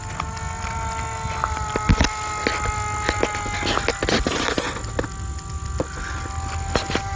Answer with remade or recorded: recorded